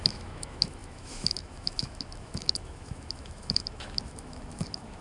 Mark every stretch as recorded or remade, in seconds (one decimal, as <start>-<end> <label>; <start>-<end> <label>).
0.0-5.0 remade